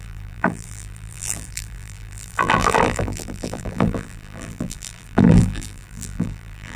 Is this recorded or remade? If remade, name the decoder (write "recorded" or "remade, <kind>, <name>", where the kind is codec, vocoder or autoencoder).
remade, vocoder, BigVGAN v2